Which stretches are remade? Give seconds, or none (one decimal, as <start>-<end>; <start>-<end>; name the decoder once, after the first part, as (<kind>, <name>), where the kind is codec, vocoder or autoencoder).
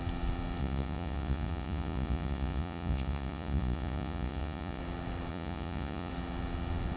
0.6-4.8 (vocoder, Vocos); 5.3-6.1